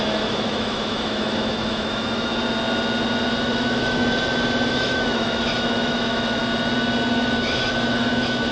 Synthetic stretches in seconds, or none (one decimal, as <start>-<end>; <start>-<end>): 0.0-2.3; 3.4-4.0; 4.7-6.4; 7.1-8.5